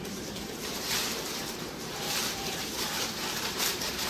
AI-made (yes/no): yes